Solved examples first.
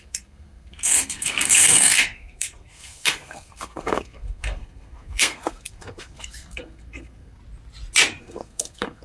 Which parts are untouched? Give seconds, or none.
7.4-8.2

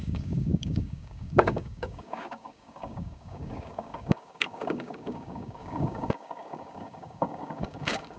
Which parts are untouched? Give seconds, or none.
none

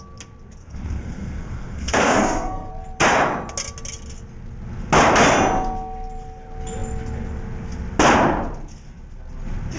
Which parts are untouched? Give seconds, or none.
0.0-0.6; 2.7-9.8

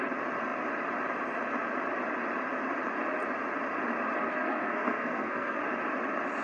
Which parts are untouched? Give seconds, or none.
0.0-4.3; 5.6-6.4

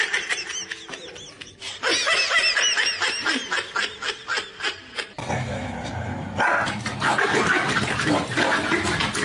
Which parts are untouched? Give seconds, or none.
0.0-9.2